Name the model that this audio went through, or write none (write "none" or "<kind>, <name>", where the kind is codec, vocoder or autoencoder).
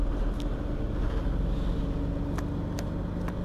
none